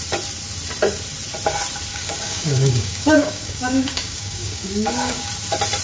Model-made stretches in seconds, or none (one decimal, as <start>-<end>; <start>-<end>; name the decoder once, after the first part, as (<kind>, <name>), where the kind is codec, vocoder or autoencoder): 1.9-5.3 (codec, DAC)